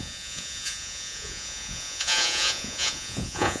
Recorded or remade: remade